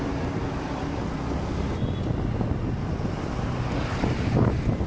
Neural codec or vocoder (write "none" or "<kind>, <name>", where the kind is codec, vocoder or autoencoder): none